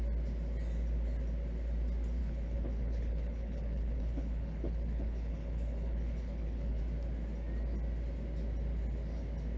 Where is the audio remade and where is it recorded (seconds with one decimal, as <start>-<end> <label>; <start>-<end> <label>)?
0.0-2.2 recorded; 2.2-6.8 remade; 6.8-9.6 recorded